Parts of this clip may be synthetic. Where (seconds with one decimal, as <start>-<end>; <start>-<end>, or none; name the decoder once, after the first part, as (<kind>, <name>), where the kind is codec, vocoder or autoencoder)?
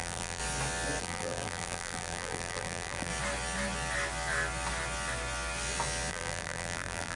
0.0-0.4 (vocoder, BigVGAN v2); 1.0-3.1; 6.1-7.2